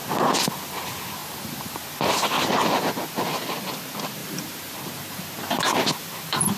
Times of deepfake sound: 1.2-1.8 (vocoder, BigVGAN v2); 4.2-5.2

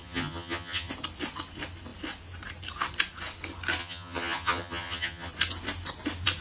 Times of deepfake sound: 0.0-0.9 (vocoder, HiFi-GAN); 3.8-5.3

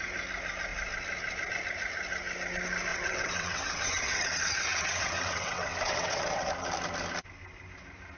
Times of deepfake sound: 2.9-6.5 (vocoder, WaveNeXt)

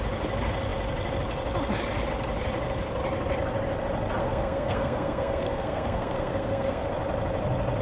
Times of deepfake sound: 4.2-6.9 (codec, SNAC)

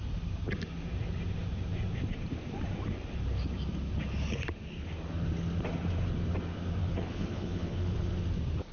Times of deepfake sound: 6.8-8.1 (codec, HILCodec)

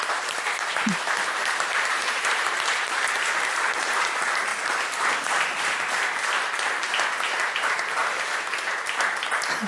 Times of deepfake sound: 0.0-4.5 (vocoder, BigVGAN v2); 5.2-8.0

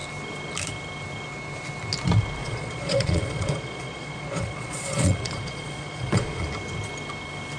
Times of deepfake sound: 2.4-6.5 (vocoder, Vocos)

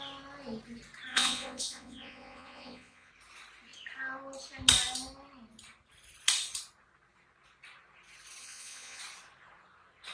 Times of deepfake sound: 1.1-3.1 (vocoder, Vocos); 8.4-9.0